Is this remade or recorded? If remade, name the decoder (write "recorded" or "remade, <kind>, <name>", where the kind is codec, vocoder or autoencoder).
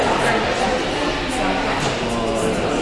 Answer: recorded